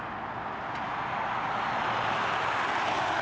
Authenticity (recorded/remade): recorded